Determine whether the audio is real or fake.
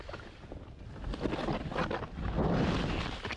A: real